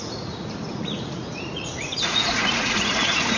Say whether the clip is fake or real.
fake